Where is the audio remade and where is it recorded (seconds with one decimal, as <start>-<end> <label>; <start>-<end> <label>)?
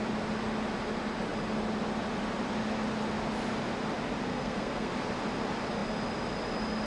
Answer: 0.0-4.3 recorded; 4.3-4.9 remade; 4.9-6.9 recorded